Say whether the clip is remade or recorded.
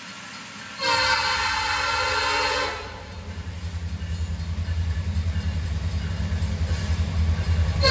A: recorded